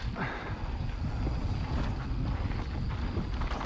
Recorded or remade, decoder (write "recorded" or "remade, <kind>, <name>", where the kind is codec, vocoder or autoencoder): recorded